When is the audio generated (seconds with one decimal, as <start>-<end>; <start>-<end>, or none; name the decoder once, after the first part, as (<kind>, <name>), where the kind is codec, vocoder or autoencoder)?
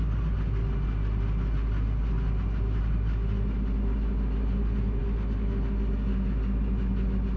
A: none